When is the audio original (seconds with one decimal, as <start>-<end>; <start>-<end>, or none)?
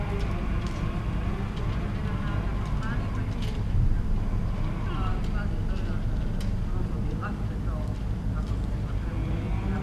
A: 0.0-9.8